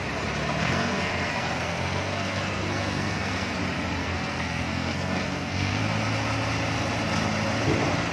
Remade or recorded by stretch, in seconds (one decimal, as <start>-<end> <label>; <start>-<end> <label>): 0.0-0.6 recorded; 0.6-3.6 remade; 3.6-4.0 recorded; 4.0-5.8 remade; 5.8-8.1 recorded